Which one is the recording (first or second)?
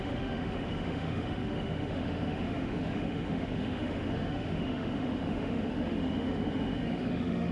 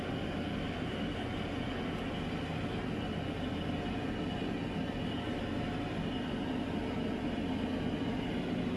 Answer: second